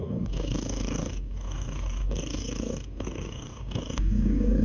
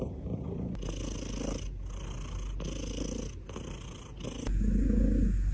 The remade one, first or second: first